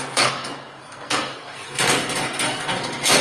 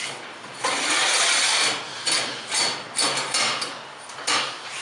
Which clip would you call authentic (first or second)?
second